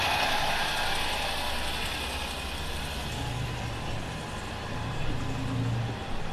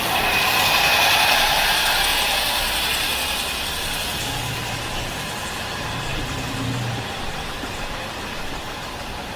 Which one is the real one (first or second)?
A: first